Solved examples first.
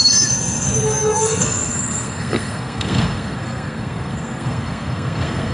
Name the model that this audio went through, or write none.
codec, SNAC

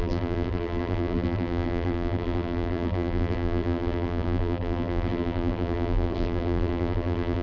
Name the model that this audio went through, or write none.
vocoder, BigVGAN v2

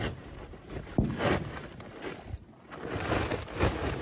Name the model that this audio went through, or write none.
none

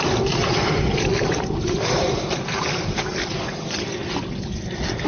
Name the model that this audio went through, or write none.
none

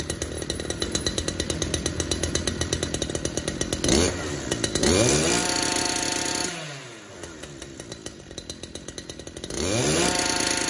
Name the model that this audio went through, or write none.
none